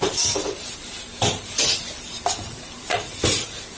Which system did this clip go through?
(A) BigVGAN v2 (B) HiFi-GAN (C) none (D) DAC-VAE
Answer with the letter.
A